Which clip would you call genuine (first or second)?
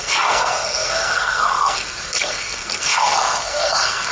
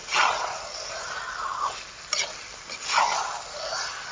second